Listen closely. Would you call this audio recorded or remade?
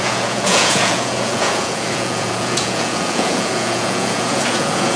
remade